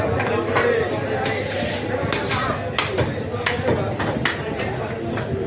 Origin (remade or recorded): recorded